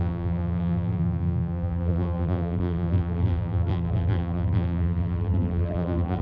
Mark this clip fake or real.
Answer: fake